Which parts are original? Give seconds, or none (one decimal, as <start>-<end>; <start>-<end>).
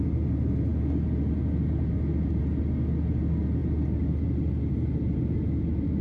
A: 0.0-6.0